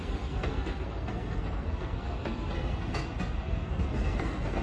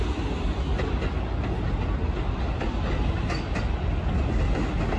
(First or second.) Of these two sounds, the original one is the second